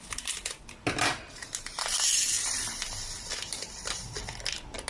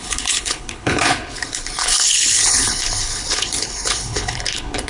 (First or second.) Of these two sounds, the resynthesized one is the second